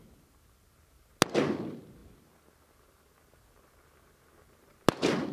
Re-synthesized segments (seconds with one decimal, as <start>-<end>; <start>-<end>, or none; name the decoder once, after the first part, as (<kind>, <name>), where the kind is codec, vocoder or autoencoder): none

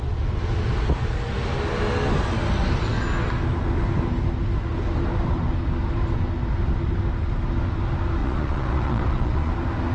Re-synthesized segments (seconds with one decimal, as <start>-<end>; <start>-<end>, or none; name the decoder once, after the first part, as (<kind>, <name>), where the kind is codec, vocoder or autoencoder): 8.2-9.5 (vocoder, Vocos)

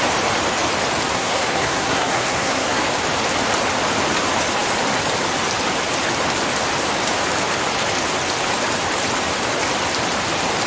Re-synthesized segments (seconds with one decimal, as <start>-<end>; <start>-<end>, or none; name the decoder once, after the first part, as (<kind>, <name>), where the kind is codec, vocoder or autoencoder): 1.1-2.8 (codec, SNAC)

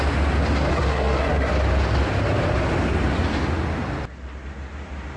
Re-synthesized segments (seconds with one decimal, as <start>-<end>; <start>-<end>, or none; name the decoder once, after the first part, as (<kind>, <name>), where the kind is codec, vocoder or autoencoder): 0.7-1.5 (codec, SNAC)

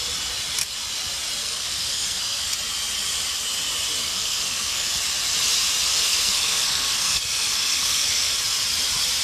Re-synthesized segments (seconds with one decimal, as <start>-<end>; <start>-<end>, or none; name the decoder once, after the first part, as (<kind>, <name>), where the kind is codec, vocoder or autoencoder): 1.4-2.5 (codec, SNAC); 4.0-5.0; 5.9-8.3

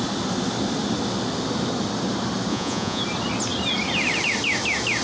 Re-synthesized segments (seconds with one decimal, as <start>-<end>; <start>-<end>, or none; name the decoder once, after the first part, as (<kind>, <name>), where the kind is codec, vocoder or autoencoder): 2.5-3.0 (vocoder, Vocos)